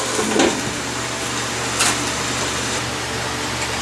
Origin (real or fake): real